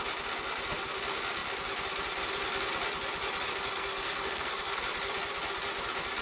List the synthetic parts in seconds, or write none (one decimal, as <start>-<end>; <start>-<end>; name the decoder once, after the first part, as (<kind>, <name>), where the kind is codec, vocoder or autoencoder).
3.5-4.8 (codec, SNAC)